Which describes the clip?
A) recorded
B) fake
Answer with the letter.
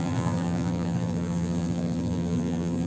B